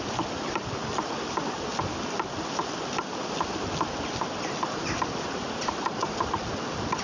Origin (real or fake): real